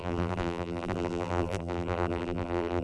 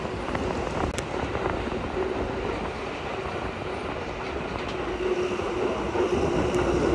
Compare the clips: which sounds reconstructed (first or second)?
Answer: first